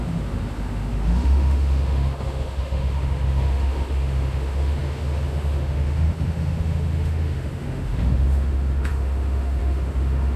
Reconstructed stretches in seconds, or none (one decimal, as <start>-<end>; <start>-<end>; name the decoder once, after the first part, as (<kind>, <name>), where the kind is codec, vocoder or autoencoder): 0.0-10.4 (autoencoder, DAC-VAE)